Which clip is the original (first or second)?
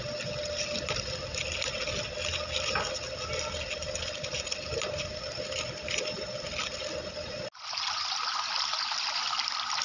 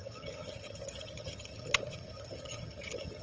first